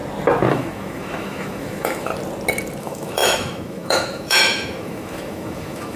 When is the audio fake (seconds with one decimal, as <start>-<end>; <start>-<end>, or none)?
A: 0.5-2.1; 2.8-6.0

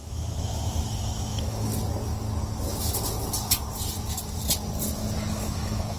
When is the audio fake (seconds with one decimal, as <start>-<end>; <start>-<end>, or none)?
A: 0.0-1.7; 5.3-6.0

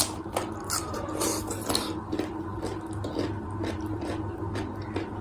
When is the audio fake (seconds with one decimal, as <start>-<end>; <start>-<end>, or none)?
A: none

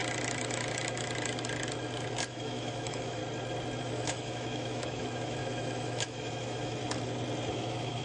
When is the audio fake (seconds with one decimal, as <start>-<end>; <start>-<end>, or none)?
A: 2.3-3.2; 3.8-6.8; 7.5-8.0

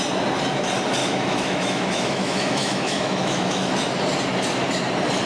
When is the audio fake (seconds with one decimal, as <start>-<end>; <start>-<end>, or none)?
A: 1.0-3.7